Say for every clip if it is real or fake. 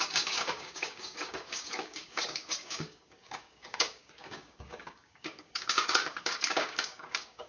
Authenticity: fake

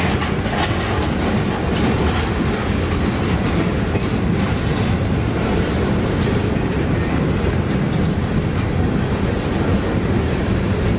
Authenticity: real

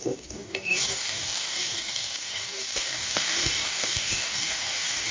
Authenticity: fake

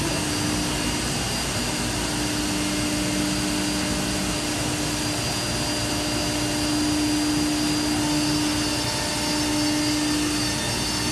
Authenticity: real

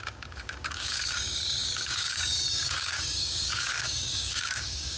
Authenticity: fake